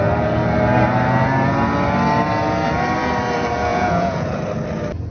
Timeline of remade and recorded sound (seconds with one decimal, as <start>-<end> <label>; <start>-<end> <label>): 0.0-3.7 recorded; 3.7-4.4 remade; 4.4-5.1 recorded